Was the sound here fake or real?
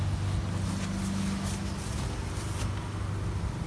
real